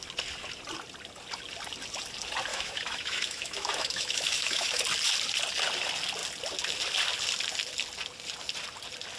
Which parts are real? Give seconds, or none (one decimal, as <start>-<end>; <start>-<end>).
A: 0.0-2.5; 4.8-9.2